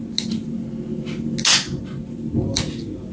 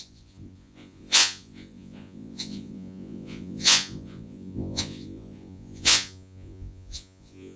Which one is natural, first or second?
first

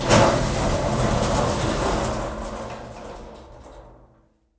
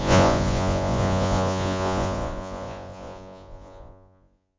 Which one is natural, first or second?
first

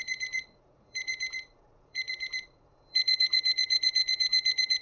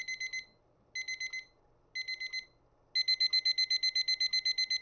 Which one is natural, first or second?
second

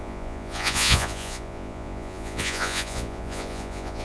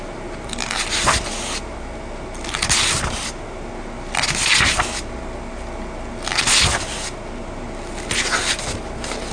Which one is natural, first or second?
second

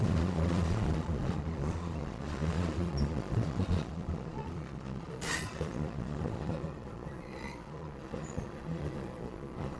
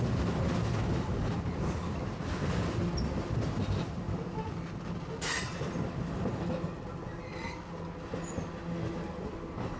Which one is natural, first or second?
second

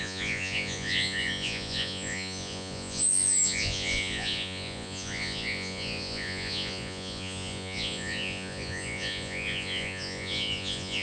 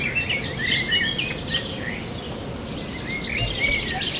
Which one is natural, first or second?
second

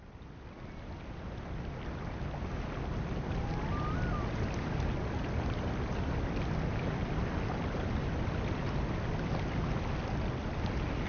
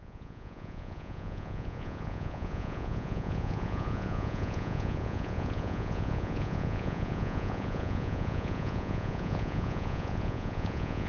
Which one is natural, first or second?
first